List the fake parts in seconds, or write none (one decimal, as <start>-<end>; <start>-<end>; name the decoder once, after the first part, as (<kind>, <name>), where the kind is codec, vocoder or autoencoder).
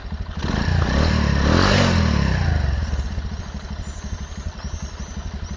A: none